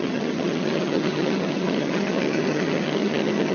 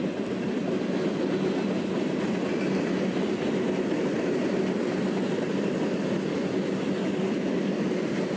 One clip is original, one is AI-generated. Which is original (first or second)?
second